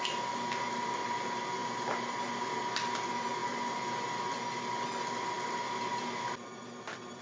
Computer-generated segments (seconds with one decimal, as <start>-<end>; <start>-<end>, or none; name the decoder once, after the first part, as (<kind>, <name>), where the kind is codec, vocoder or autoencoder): none